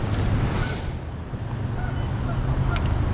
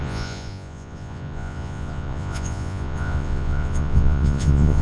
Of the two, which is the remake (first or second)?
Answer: second